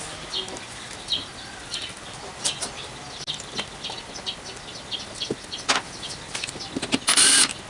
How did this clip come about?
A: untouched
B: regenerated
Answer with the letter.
A